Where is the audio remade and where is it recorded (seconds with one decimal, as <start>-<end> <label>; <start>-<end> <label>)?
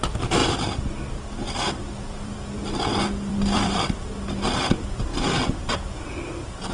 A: 0.0-0.4 remade; 0.4-1.7 recorded; 1.7-5.1 remade; 5.1-5.6 recorded; 5.6-6.7 remade